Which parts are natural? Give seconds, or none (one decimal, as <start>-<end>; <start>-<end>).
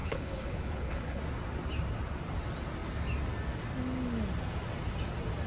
1.2-5.5